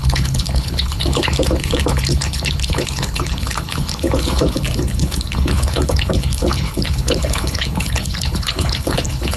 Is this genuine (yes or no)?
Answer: no